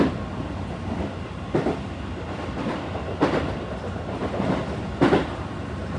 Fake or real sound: real